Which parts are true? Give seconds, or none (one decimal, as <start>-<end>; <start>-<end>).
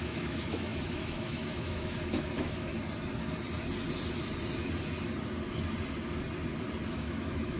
2.7-6.9